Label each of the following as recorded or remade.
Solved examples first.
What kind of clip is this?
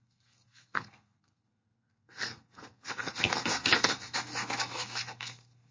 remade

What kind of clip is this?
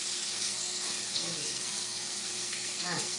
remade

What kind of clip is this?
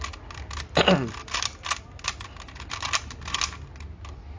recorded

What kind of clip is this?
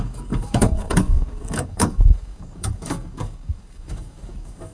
remade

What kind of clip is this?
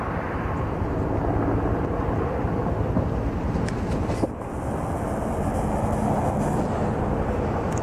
recorded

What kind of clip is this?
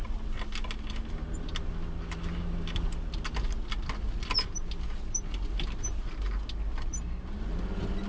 recorded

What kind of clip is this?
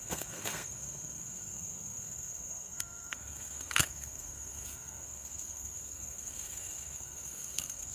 remade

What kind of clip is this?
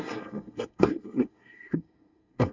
remade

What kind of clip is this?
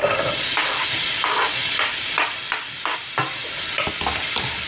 recorded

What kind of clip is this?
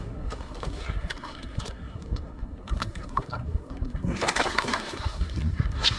remade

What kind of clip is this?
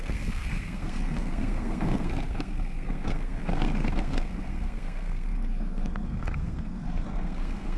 remade